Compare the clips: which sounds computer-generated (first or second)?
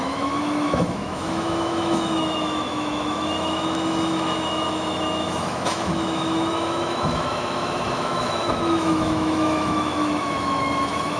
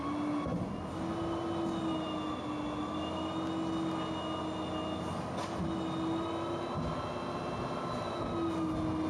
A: first